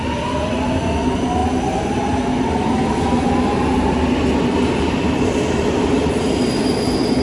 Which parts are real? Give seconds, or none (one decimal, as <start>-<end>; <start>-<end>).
0.0-7.2